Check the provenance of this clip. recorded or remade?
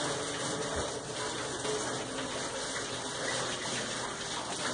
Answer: recorded